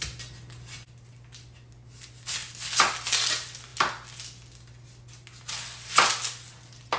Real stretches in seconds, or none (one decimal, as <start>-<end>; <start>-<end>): 0.0-7.0